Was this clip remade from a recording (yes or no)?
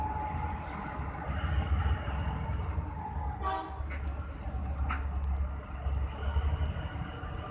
no